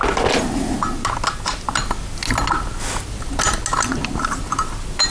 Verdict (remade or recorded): recorded